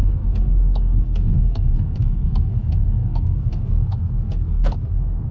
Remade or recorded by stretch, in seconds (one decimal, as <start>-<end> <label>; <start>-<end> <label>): 0.0-5.3 remade